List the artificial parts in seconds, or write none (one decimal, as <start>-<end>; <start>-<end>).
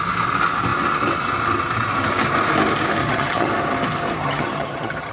3.0-3.5; 4.2-5.1